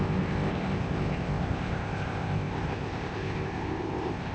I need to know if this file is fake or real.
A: fake